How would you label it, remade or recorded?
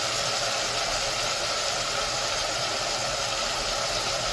recorded